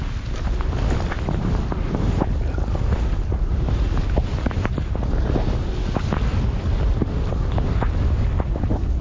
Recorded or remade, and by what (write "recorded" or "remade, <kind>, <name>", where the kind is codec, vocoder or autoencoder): recorded